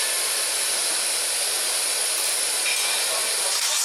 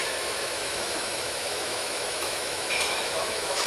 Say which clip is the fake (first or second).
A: second